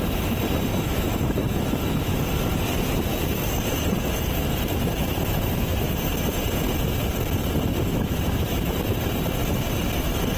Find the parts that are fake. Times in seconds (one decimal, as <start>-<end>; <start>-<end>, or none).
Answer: 0.7-2.3; 3.1-5.9; 7.7-8.8